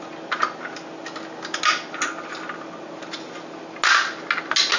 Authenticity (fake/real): real